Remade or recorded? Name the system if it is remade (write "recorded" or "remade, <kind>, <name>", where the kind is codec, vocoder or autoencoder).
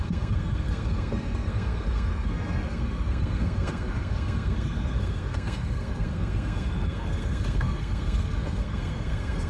remade, codec, SNAC